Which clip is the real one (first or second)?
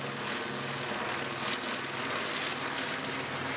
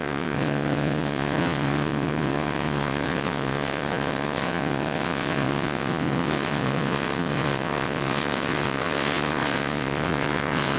first